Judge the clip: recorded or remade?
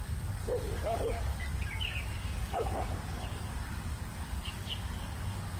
remade